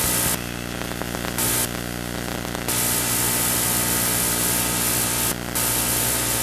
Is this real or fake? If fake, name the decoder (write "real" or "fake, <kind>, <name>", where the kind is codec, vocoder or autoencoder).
real